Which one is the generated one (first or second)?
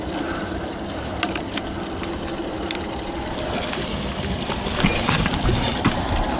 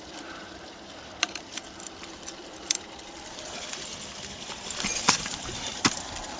second